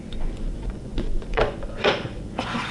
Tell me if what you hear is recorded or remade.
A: remade